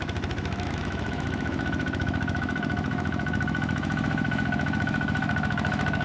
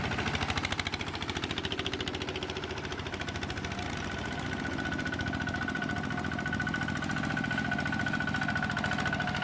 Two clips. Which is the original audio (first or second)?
second